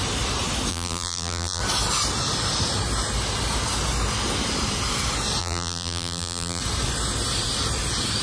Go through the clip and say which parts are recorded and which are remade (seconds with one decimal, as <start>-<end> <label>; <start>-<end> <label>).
0.0-0.7 recorded; 0.7-1.6 remade; 1.6-5.4 recorded; 5.4-6.6 remade; 6.6-8.2 recorded